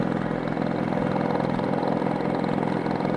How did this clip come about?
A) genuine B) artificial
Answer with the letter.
A